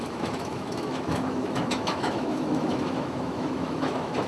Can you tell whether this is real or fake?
fake